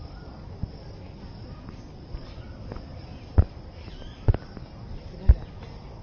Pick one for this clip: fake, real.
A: real